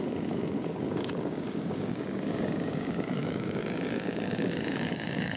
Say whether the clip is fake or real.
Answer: fake